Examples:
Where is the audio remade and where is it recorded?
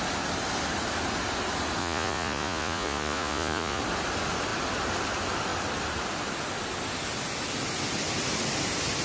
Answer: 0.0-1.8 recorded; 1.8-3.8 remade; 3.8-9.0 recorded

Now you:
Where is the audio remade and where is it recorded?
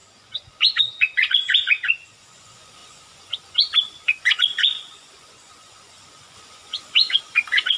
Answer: 0.0-7.8 remade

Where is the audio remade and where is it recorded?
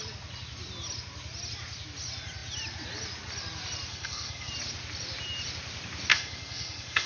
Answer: 0.0-3.9 recorded; 3.9-4.5 remade; 4.5-6.1 recorded; 6.1-7.1 remade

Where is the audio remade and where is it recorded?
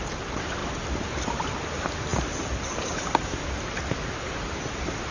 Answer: 0.0-5.1 recorded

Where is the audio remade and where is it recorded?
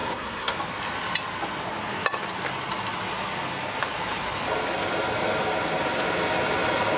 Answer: 0.0-0.6 remade; 0.6-7.0 recorded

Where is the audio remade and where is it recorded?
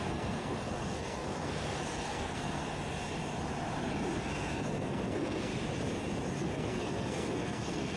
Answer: 0.0-2.6 remade; 2.6-4.2 recorded; 4.2-5.5 remade; 5.5-6.4 recorded; 6.4-8.0 remade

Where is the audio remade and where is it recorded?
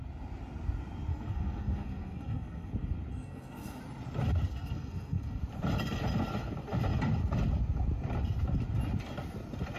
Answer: 0.0-1.1 recorded; 1.1-2.7 remade; 2.7-3.1 recorded; 3.1-3.8 remade; 3.8-4.5 recorded; 4.5-5.4 remade; 5.4-9.8 recorded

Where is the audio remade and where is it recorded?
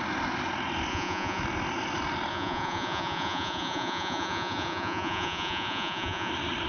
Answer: 0.0-0.9 recorded; 0.9-1.4 remade; 1.4-2.3 recorded; 2.3-6.3 remade; 6.3-6.7 recorded